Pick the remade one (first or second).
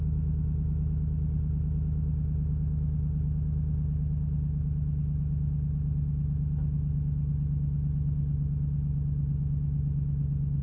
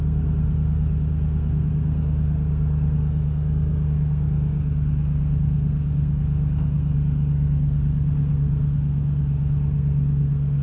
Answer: second